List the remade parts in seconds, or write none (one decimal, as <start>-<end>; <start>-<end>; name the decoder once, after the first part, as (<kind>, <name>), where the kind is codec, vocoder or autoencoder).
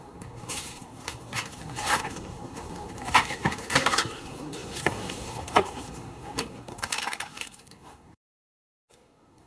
0.0-9.5 (codec, SNAC)